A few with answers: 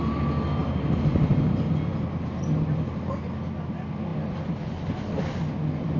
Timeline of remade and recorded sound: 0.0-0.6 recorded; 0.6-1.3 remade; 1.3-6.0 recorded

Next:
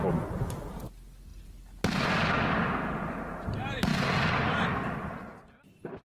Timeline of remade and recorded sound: 0.0-6.2 recorded

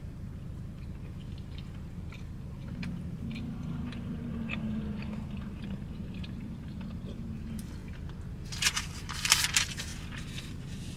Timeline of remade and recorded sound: 0.0-7.8 remade; 7.8-8.3 recorded; 8.3-9.9 remade; 9.9-10.5 recorded; 10.5-11.0 remade

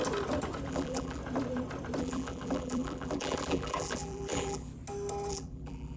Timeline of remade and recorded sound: 0.0-0.7 recorded; 0.7-1.2 remade; 1.2-2.0 recorded; 2.0-4.7 remade; 4.7-5.3 recorded; 5.3-6.0 remade

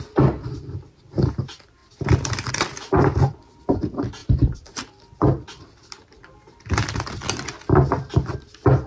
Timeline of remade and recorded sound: 0.0-1.8 remade; 1.8-2.5 recorded; 2.5-8.9 remade

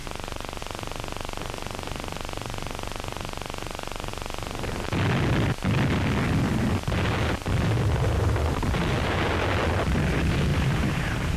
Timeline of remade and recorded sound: 0.0-0.6 remade; 0.6-10.5 recorded; 10.5-11.4 remade

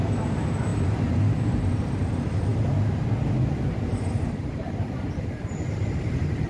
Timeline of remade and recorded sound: 0.0-6.5 remade